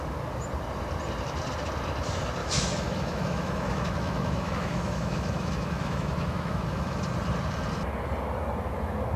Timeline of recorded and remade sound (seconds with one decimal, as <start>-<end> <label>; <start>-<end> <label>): 0.0-2.4 recorded; 2.4-7.0 remade; 7.0-9.2 recorded